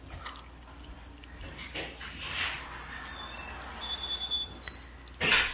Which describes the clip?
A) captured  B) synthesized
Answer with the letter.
A